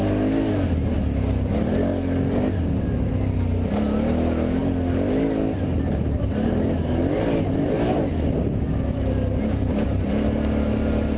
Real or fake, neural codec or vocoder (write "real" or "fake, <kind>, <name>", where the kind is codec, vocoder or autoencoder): real